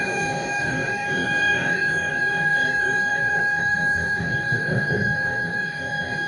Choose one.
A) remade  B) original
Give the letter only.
A